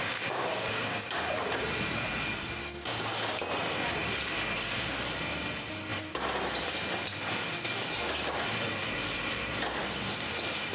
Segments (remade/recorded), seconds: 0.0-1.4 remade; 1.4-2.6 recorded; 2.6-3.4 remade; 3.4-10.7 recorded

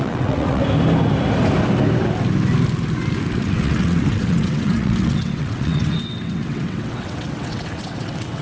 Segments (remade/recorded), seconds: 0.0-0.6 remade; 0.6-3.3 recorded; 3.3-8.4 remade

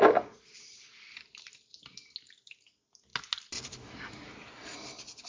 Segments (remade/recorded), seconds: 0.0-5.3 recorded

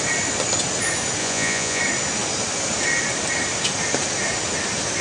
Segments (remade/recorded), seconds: 0.0-1.2 recorded; 1.2-1.8 remade; 1.8-5.0 recorded

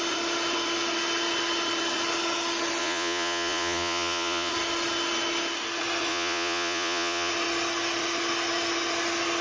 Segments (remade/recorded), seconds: 0.0-2.8 recorded; 2.8-4.5 remade; 4.5-6.1 recorded; 6.1-7.3 remade; 7.3-9.4 recorded